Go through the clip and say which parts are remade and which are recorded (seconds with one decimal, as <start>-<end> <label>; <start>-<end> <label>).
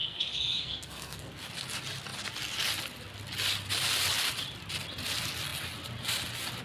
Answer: 0.0-1.5 remade; 1.5-6.6 recorded